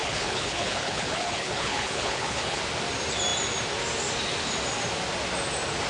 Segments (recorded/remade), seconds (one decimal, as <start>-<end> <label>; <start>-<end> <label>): 0.0-2.6 remade; 2.6-5.9 recorded